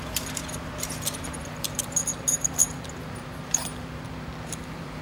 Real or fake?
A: fake